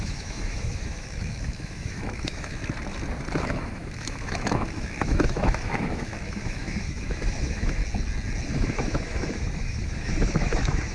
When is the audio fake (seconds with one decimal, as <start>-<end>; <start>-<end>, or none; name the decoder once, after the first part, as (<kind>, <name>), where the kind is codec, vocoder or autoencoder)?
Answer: 0.0-2.6 (autoencoder, DAC-VAE); 3.4-7.8; 8.5-10.9